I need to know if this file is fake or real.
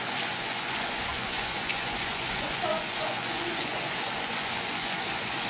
fake